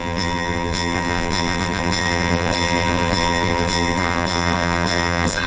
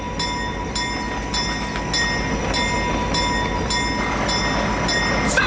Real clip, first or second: second